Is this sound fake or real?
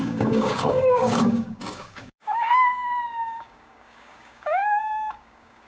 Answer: fake